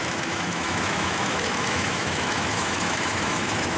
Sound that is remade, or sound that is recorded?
remade